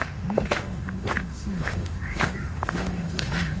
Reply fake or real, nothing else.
fake